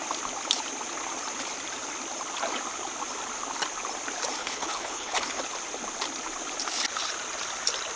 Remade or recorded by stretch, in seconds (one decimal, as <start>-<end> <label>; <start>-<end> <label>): 0.0-4.4 recorded; 4.4-5.4 remade; 5.4-8.0 recorded